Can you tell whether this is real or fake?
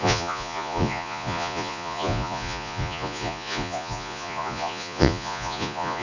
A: fake